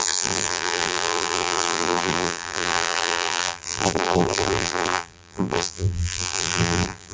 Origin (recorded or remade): remade